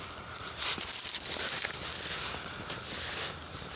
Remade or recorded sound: recorded